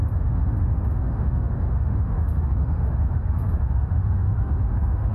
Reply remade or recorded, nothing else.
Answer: remade